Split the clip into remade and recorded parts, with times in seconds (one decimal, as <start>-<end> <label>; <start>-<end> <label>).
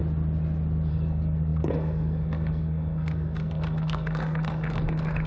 0.0-0.9 recorded; 0.9-5.3 remade